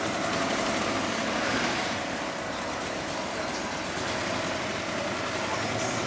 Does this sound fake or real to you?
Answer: fake